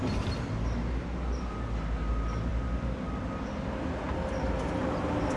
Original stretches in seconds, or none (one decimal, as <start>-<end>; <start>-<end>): 0.0-5.4